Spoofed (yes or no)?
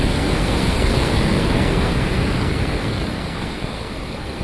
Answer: yes